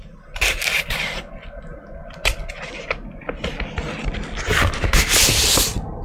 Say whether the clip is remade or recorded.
recorded